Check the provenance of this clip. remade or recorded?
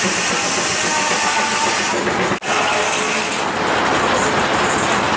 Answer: recorded